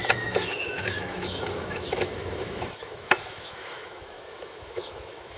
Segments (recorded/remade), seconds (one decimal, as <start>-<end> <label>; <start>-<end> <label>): 0.0-5.4 remade